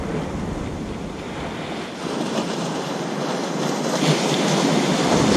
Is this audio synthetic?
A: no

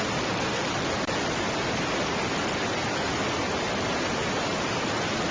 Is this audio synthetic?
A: no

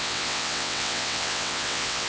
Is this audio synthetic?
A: yes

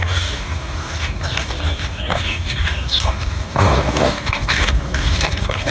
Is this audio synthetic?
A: yes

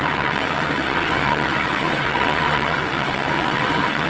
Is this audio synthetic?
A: yes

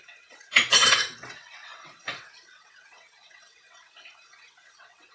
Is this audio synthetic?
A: yes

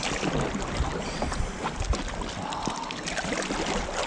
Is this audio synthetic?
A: no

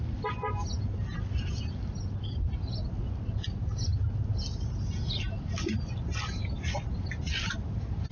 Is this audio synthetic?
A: no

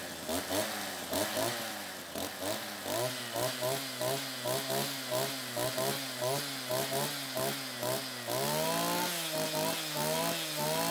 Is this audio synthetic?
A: no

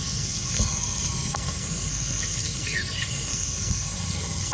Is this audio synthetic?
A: yes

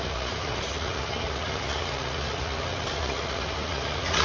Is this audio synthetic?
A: yes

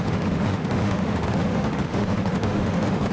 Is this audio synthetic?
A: yes